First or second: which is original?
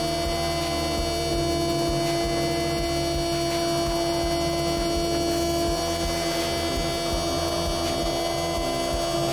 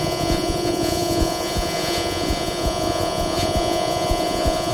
first